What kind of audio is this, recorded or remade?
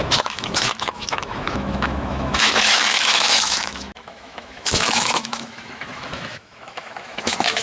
remade